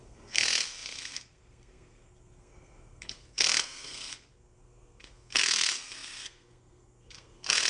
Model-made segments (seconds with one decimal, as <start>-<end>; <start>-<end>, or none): 0.0-7.7